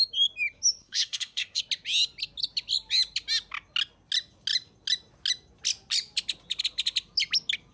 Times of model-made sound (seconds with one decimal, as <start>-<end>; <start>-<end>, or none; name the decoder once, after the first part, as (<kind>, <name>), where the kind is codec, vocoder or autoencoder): 0.8-1.6 (codec, SNAC)